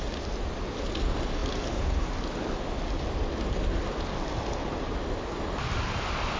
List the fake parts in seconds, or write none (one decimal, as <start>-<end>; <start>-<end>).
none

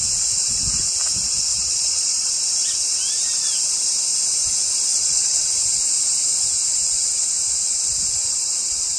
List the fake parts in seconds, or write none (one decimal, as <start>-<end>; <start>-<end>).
1.5-2.3; 4.9-5.5

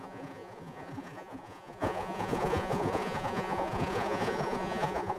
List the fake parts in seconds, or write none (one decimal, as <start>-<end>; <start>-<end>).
0.0-5.2

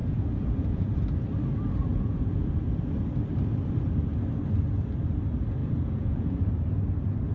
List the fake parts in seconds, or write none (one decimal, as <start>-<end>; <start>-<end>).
0.0-1.0; 1.8-2.5; 5.6-6.5

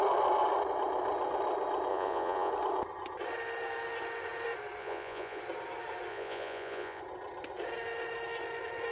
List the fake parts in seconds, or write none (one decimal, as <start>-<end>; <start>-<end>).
1.9-2.5; 4.8-5.4; 6.1-7.0